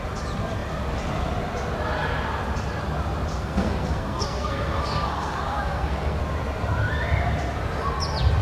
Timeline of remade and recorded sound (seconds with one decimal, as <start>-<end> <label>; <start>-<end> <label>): 0.0-3.3 recorded; 3.3-6.2 remade; 6.2-8.4 recorded